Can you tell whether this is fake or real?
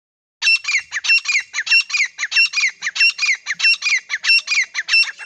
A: real